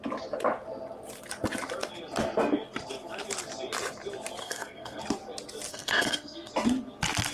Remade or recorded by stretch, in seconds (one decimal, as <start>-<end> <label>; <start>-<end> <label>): 0.0-4.4 recorded; 4.4-5.0 remade; 5.0-5.7 recorded; 5.7-6.5 remade; 6.5-7.3 recorded